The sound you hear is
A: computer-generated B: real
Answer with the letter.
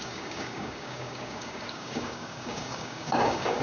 A